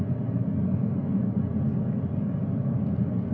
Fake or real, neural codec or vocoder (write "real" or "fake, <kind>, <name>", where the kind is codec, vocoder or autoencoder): real